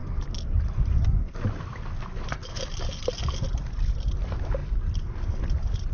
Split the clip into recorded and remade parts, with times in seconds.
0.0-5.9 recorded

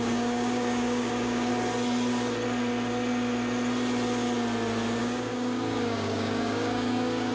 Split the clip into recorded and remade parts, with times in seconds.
0.0-1.5 remade; 1.5-5.0 recorded; 5.0-7.3 remade